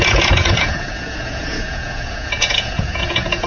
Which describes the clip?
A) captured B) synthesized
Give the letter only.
B